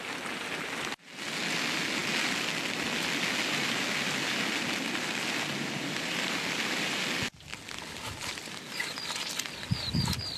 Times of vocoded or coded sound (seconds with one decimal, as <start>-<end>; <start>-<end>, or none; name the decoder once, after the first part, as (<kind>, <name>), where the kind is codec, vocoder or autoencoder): none